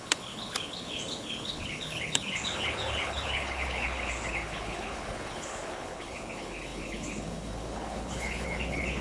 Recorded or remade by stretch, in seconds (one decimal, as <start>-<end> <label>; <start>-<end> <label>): 0.0-9.0 remade